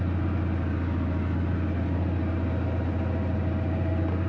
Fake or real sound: real